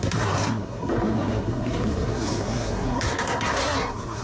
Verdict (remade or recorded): remade